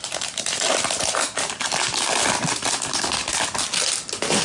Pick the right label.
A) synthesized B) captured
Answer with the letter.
B